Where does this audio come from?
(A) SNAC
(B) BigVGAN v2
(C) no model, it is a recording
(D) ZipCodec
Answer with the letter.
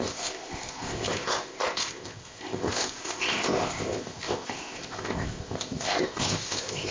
D